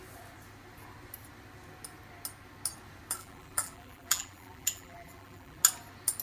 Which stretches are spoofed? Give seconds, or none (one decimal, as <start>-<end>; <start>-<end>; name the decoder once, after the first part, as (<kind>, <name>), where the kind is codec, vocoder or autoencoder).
3.2-5.6 (vocoder, BigVGAN v2)